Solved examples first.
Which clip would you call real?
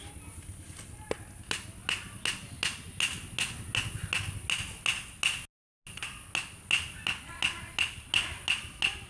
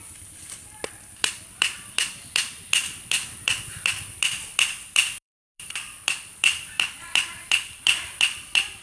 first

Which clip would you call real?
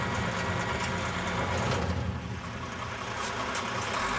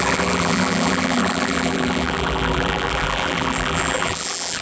first